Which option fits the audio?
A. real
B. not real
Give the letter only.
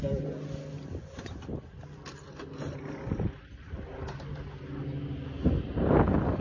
A